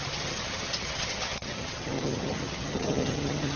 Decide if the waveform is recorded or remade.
remade